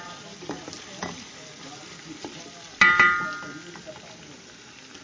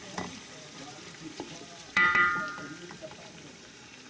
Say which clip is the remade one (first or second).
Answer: second